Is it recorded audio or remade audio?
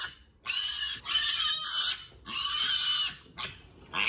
recorded